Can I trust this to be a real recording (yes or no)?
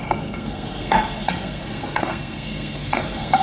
no